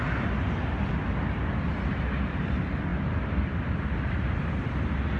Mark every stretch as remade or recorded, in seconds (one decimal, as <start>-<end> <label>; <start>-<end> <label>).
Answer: 0.0-5.2 recorded